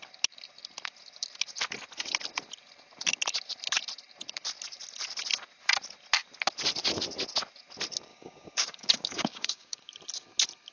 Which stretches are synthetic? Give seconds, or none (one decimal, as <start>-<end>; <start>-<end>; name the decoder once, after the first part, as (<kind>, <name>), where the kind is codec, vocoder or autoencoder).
8.1-9.9 (codec, DAC)